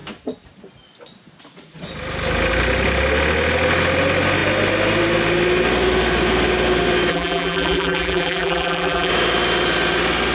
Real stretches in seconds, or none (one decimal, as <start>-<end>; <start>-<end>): 0.0-7.1; 9.1-10.3